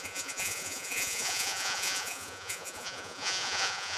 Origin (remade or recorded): remade